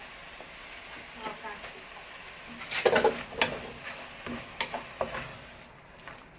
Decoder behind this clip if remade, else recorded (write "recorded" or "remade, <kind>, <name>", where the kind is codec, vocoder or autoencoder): recorded